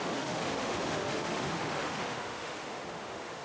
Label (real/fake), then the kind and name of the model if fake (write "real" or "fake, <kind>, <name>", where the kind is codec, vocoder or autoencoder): fake, autoencoder, DAC-VAE